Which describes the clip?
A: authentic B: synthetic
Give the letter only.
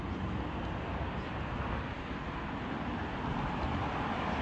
A